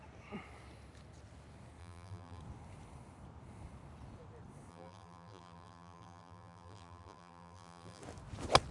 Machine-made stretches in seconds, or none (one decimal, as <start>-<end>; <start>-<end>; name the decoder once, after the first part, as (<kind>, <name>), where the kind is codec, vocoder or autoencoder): 1.8-2.4 (vocoder, BigVGAN v2); 4.7-8.0